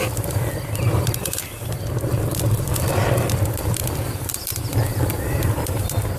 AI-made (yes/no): yes